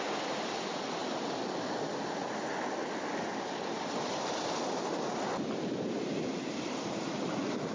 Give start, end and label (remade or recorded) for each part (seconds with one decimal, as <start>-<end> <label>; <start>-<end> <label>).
0.0-7.7 recorded